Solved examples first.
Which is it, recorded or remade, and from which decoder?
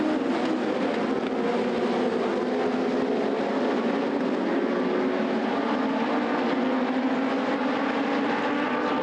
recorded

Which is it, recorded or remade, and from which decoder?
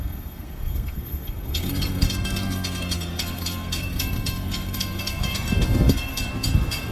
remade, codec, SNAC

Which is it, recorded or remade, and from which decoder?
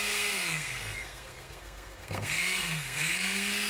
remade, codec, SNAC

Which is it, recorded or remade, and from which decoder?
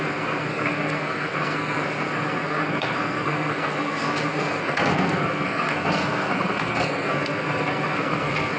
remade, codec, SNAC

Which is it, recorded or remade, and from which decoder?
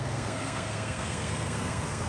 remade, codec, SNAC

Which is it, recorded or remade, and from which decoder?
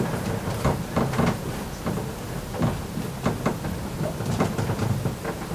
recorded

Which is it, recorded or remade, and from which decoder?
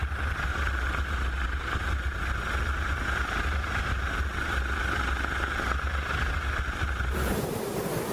recorded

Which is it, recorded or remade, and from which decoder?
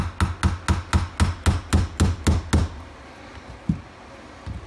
recorded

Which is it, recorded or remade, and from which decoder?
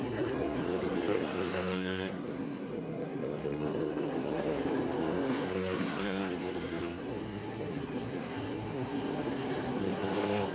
remade, codec, SNAC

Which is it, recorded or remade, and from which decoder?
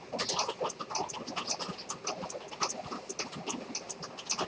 recorded